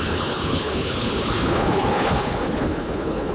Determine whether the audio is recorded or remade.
remade